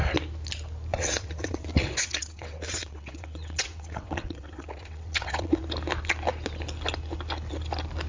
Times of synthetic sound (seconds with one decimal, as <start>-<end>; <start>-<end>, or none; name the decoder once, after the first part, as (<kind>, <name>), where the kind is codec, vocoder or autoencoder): 0.9-5.6 (vocoder, WaveNeXt)